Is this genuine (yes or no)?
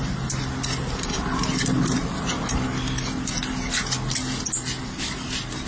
yes